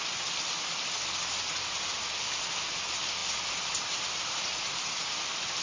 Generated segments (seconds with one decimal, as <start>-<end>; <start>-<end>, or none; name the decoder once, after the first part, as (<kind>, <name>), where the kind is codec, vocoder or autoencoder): none